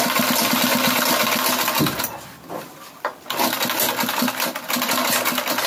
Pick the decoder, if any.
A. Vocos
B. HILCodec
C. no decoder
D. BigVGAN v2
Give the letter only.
C